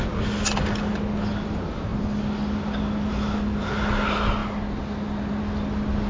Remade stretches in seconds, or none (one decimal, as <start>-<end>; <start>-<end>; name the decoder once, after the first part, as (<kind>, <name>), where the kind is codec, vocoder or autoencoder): none